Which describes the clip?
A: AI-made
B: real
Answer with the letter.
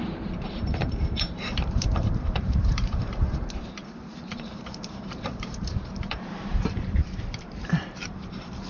A